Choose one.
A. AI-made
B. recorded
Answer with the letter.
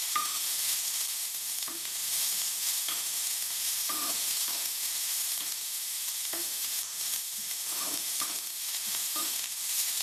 A